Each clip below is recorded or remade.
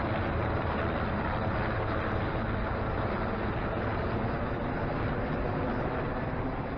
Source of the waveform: recorded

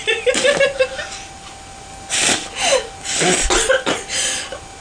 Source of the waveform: recorded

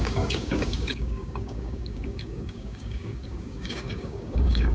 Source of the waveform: remade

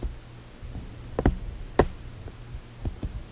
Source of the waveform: recorded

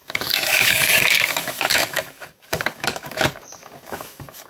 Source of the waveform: remade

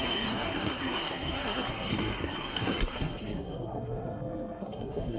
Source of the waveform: remade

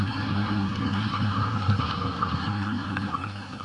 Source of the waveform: remade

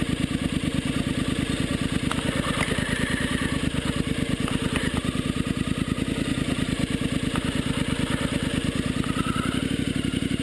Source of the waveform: recorded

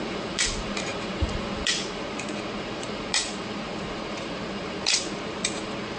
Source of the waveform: remade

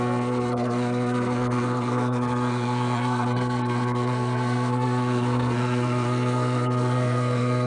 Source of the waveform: remade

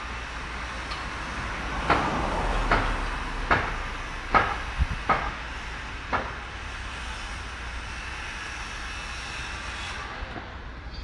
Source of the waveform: recorded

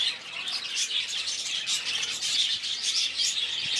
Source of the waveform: recorded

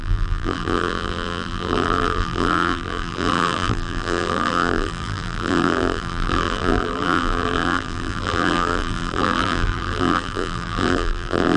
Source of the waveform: remade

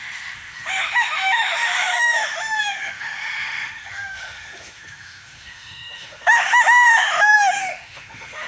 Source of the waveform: remade